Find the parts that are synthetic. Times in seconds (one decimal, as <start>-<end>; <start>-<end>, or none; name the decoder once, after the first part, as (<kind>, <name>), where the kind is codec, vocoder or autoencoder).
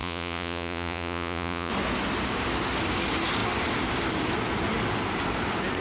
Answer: 0.0-1.7 (vocoder, Vocos)